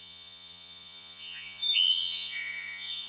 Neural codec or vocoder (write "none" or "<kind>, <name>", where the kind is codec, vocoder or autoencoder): vocoder, Vocos